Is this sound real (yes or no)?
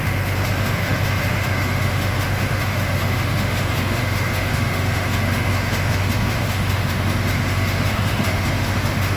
no